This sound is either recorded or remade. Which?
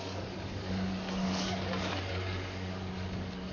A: remade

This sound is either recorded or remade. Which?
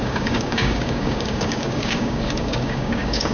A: remade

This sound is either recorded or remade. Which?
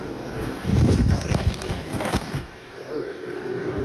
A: remade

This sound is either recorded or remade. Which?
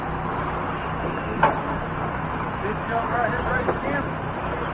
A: recorded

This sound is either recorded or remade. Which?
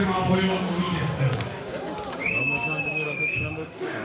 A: remade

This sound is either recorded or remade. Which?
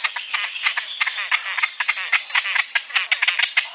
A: recorded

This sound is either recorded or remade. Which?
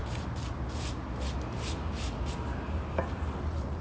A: recorded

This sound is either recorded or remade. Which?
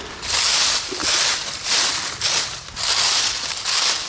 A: recorded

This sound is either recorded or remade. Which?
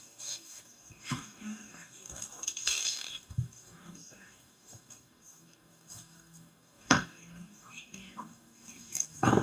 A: remade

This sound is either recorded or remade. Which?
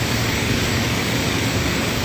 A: remade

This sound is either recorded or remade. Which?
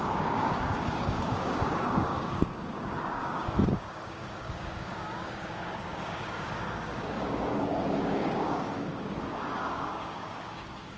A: remade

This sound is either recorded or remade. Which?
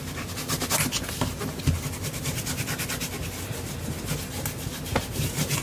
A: recorded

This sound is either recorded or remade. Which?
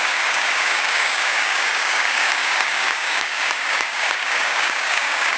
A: remade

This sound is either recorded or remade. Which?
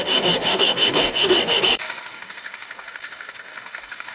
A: remade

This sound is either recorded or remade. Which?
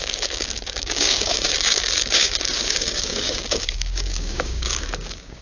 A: remade